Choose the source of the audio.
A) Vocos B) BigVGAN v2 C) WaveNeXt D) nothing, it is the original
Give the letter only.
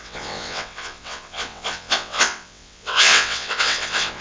C